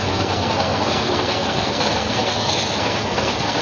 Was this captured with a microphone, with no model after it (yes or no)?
no